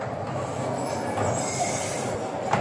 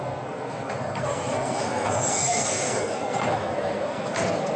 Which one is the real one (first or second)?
first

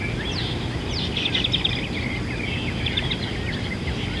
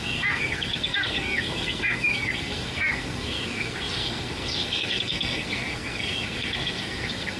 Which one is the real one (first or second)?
first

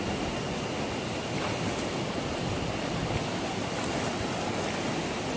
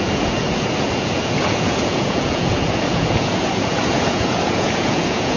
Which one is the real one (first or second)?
first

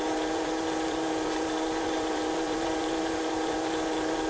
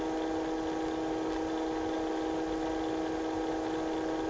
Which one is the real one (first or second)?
second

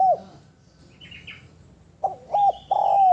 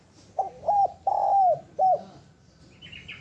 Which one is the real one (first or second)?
first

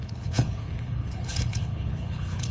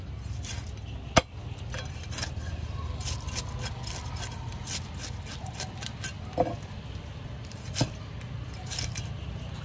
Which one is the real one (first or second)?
second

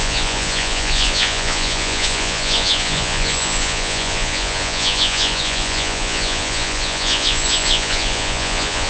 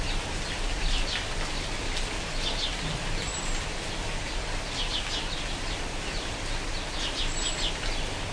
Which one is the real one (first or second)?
second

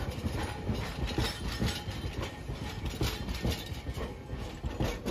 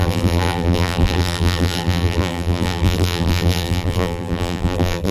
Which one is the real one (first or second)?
first